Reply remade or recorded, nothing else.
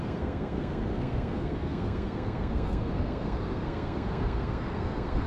remade